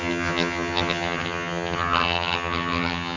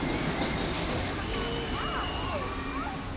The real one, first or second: second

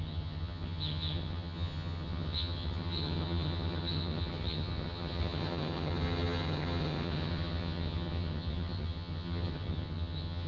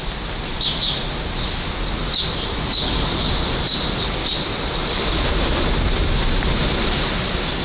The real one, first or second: second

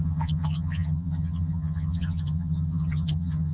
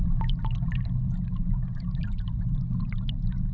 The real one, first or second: second